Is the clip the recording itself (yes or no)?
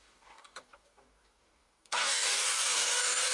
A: no